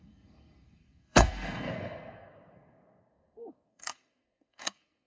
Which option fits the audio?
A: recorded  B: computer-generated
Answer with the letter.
B